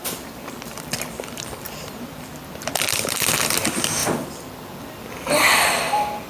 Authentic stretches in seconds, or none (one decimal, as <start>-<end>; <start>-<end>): 1.9-4.0